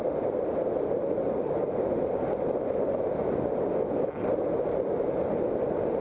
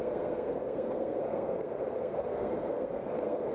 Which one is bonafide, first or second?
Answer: first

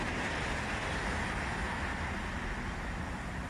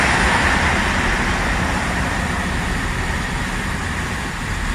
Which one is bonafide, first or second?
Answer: first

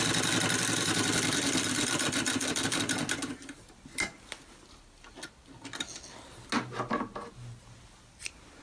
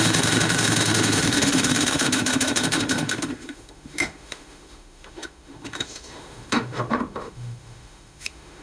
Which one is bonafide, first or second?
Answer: first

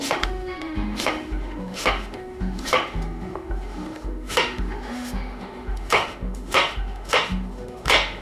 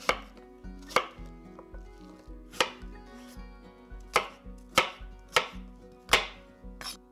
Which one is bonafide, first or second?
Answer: second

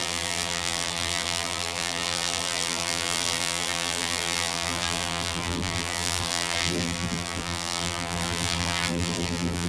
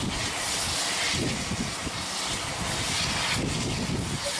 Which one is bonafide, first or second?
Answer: second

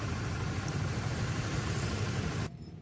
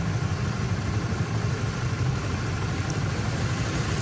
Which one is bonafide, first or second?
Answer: second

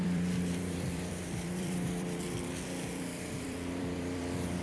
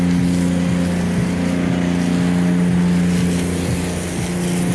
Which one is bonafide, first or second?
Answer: second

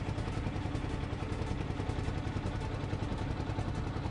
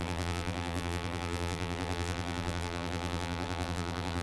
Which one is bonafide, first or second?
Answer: first